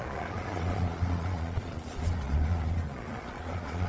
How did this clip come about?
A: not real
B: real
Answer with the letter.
A